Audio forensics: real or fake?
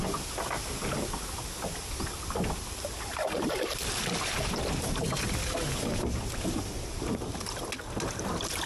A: real